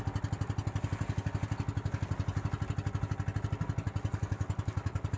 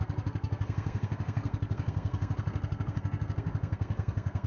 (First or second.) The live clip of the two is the first